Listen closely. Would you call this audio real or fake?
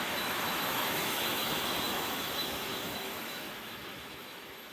fake